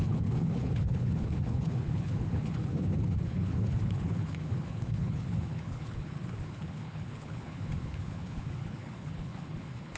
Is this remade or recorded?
remade